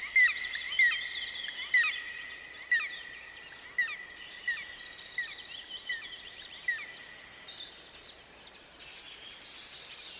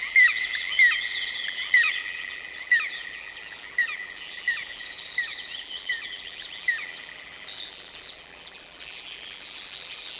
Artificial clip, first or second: second